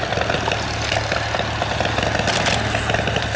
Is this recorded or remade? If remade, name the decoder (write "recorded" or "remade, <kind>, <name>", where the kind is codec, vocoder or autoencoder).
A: recorded